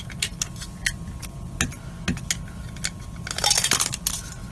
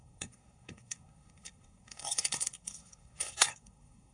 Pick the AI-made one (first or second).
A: second